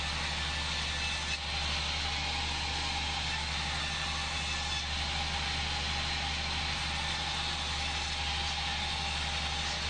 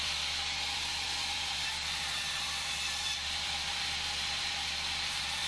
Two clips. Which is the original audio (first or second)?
first